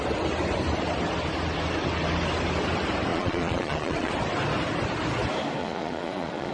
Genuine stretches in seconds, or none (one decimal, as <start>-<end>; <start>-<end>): 0.0-3.1; 4.1-5.6